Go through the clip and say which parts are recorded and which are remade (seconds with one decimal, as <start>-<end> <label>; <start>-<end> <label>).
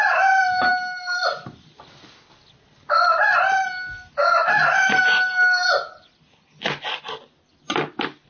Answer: 0.0-8.3 recorded